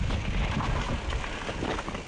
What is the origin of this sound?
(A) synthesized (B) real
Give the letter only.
B